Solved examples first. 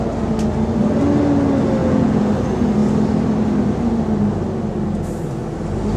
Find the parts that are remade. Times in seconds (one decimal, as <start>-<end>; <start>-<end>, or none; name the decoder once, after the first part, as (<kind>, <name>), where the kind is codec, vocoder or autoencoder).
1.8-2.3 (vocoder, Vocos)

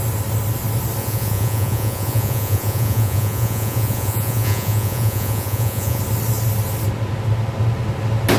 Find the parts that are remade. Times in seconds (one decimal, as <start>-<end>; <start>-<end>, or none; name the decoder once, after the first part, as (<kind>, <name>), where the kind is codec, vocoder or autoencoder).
1.0-6.0 (vocoder, Vocos)

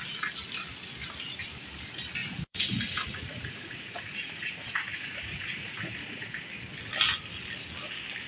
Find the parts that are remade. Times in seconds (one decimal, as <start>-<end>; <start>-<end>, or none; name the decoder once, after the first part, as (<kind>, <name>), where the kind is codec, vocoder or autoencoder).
2.2-6.4 (vocoder, Vocos)

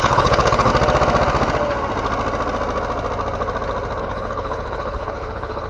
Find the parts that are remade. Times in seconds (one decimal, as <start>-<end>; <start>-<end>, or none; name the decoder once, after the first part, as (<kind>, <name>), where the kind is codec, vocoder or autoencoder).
0.0-0.7 (codec, HILCodec); 4.0-5.7

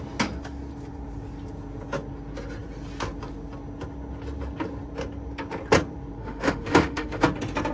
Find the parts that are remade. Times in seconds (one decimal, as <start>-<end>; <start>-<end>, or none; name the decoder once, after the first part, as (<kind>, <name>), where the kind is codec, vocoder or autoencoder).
6.2-7.2 (autoencoder, DAC-VAE)

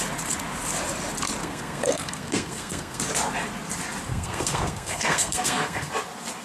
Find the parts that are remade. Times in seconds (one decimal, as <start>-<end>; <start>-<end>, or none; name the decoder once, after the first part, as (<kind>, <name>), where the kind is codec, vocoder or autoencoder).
1.4-3.0 (codec, SNAC); 4.1-5.9

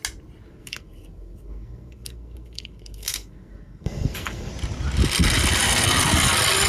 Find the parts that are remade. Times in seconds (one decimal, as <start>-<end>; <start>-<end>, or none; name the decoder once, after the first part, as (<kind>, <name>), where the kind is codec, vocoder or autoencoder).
0.5-4.5 (codec, SNAC)

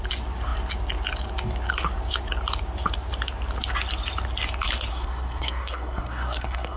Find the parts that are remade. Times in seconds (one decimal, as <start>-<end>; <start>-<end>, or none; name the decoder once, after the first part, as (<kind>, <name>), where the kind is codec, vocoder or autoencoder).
4.9-6.8 (codec, SNAC)